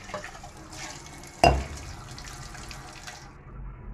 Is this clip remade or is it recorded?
recorded